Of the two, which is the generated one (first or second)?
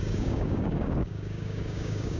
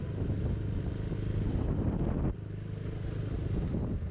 first